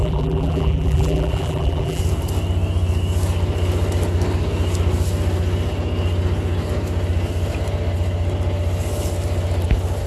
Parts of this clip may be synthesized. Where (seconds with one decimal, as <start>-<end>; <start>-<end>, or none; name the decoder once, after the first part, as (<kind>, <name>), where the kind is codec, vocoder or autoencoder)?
0.0-2.0 (vocoder, BigVGAN v2)